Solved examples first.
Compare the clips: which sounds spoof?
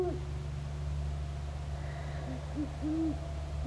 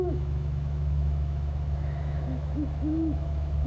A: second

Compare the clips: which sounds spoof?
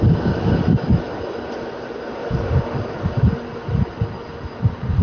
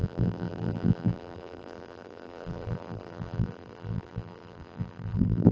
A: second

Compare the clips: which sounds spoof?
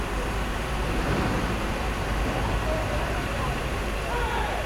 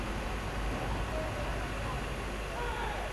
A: first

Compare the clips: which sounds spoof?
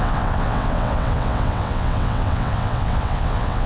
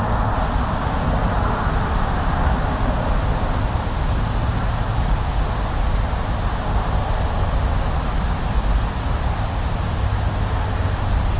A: first